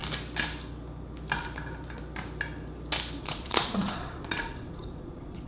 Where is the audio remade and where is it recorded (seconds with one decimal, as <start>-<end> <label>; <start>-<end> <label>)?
0.0-3.2 recorded; 3.2-5.5 remade